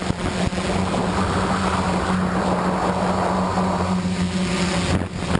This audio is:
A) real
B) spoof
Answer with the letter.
A